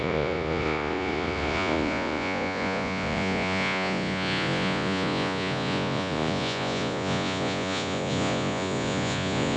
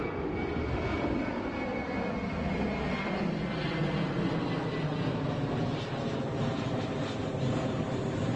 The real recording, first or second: second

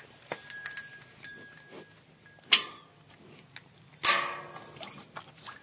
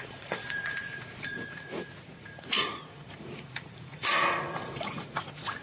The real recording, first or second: first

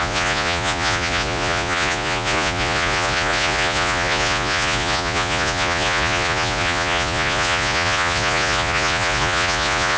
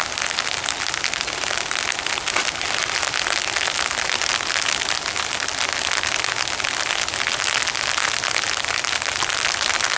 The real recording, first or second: second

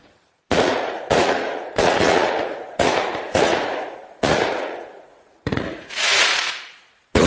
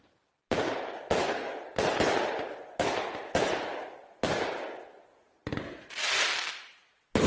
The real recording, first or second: second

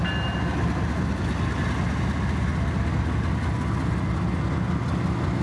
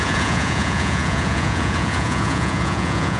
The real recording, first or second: first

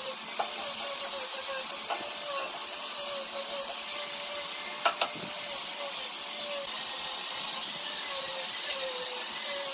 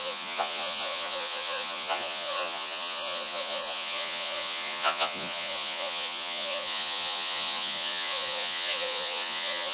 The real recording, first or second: first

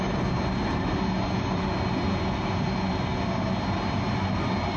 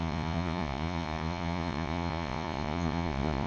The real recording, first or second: first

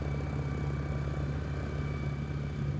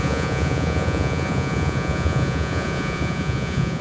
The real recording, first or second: first